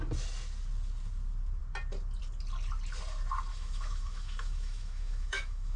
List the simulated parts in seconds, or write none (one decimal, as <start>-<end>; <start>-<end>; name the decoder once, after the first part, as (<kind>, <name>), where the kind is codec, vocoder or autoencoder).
3.5-5.8 (autoencoder, DAC-VAE)